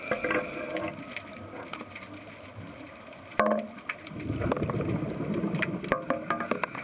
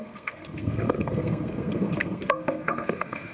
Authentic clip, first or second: first